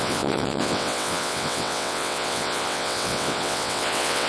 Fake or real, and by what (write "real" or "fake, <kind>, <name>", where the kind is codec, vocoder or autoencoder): fake, vocoder, WaveNeXt